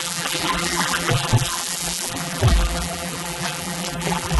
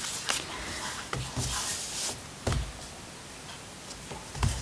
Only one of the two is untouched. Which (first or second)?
second